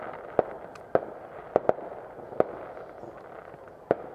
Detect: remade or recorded recorded